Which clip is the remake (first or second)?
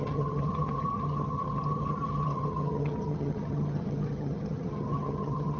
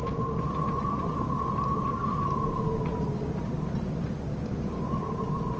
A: first